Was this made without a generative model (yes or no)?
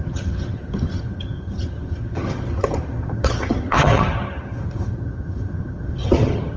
no